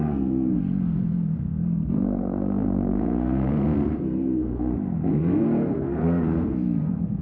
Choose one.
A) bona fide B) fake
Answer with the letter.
B